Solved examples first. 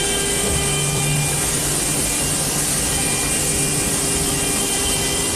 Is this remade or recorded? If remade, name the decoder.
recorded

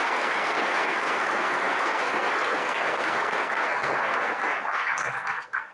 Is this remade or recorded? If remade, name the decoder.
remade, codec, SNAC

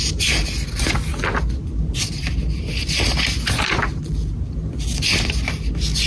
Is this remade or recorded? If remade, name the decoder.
recorded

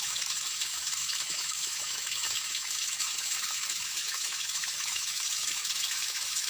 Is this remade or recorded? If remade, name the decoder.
remade, autoencoder, DAC-VAE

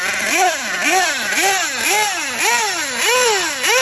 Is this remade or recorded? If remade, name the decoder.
recorded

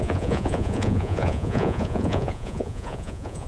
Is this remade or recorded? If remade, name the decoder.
remade, vocoder, Vocos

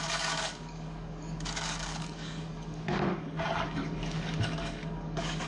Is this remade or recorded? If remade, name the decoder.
remade, codec, DAC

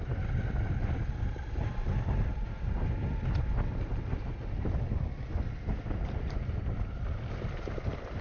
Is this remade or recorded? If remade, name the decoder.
recorded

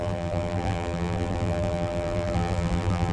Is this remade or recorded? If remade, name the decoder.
remade, vocoder, BigVGAN v2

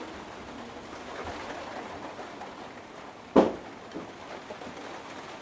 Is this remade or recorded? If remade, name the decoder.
recorded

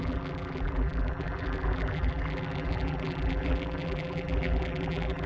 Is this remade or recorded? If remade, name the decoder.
remade, vocoder, BigVGAN v2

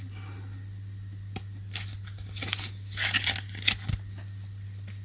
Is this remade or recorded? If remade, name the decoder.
recorded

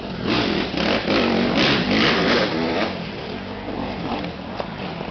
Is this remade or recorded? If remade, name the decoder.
recorded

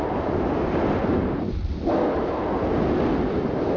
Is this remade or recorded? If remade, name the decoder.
recorded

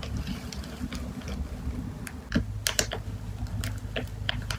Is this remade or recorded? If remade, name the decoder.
recorded